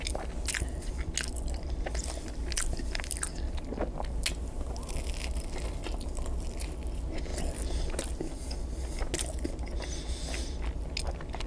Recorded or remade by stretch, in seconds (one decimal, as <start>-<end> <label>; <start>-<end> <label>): 0.0-11.5 recorded